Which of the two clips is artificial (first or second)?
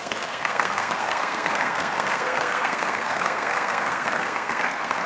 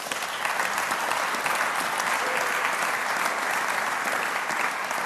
first